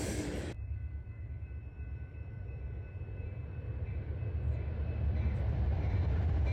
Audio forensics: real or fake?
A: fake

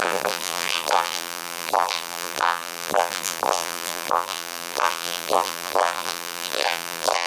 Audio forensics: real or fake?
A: fake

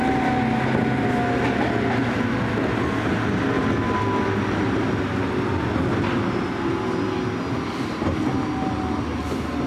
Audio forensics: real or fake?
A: real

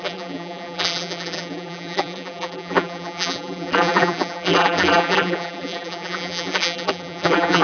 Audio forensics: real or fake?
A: fake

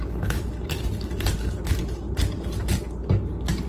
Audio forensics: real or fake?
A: real